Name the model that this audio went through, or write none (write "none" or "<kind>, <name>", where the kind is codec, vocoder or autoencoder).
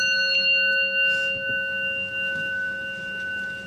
none